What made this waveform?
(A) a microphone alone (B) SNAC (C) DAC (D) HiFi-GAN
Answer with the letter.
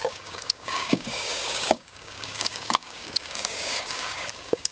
C